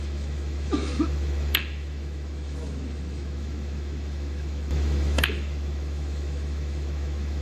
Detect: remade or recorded remade